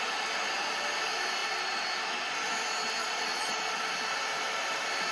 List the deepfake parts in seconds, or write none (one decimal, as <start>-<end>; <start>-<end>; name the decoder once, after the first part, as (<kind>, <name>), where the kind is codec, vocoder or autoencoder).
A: 3.0-3.7 (vocoder, Vocos)